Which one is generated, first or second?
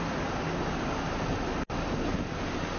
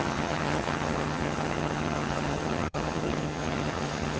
second